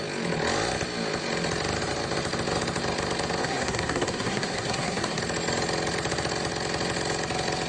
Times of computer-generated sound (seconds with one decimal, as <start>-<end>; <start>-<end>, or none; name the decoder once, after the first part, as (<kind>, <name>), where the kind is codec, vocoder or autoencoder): 3.4-5.2 (codec, SNAC)